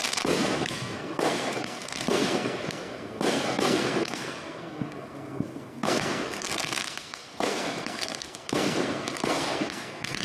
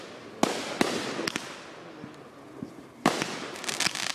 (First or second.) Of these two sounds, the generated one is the first